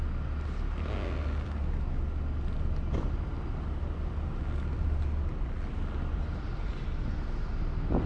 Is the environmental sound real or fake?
real